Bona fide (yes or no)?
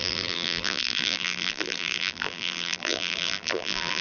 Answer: no